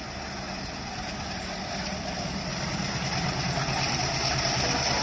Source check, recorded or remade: recorded